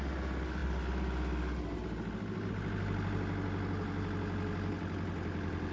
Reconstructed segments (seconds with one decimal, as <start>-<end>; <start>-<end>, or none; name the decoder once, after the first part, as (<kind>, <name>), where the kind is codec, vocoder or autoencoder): none